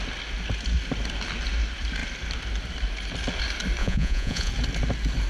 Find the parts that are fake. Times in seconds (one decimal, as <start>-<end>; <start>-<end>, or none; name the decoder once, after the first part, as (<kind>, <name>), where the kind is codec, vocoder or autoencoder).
3.8-4.5 (vocoder, Vocos)